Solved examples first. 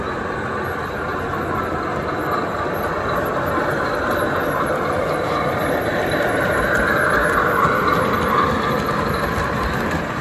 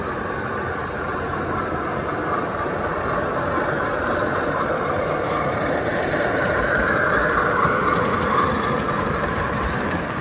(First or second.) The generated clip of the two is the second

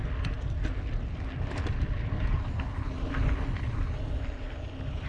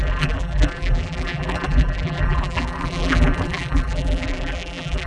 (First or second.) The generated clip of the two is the second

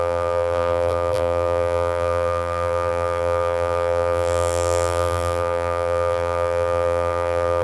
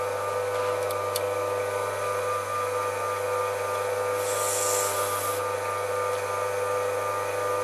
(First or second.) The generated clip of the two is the first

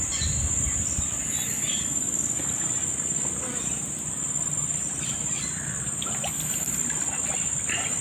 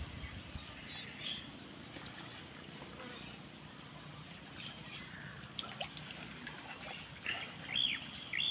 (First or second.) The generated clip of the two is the second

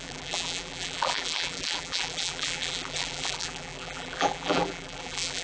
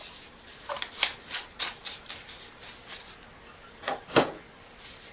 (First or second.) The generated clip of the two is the first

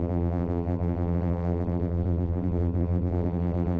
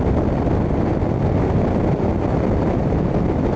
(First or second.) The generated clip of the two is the first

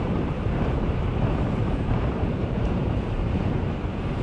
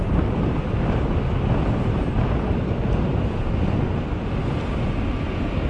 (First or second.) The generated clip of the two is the first